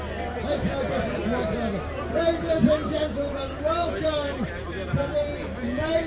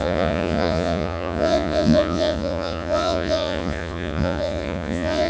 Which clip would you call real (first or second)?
first